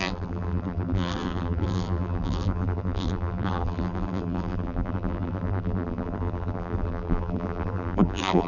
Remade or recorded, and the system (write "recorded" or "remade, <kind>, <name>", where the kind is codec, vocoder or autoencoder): remade, vocoder, BigVGAN v2